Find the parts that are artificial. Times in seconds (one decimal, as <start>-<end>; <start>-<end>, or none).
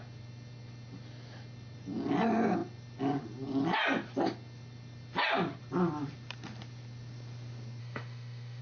7.8-8.6